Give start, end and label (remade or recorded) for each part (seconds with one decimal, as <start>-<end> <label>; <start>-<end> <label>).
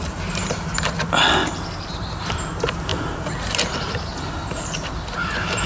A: 0.0-1.4 recorded; 1.4-2.3 remade; 2.3-5.7 recorded